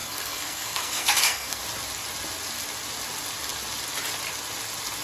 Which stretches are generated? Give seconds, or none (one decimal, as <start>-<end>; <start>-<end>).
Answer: 0.0-1.6